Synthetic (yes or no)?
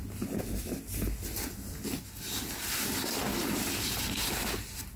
no